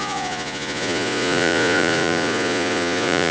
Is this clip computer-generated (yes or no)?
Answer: yes